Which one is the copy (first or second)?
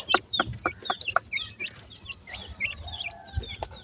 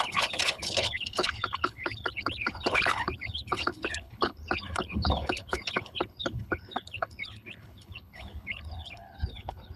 second